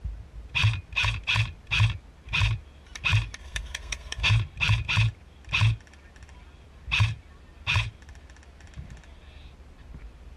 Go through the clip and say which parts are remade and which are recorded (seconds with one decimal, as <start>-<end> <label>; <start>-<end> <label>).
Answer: 0.0-3.4 recorded; 3.4-4.3 remade; 4.3-10.4 recorded